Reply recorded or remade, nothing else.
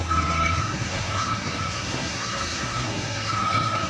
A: remade